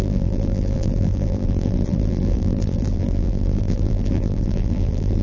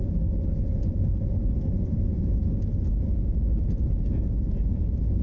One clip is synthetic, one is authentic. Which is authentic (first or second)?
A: second